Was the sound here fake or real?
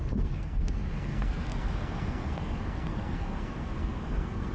fake